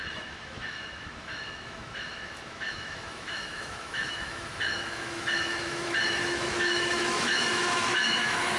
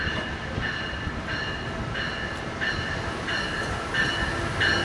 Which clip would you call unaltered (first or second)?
second